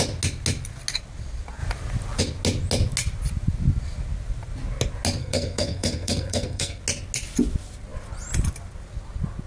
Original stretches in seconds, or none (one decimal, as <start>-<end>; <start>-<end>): 0.0-5.2; 6.8-9.5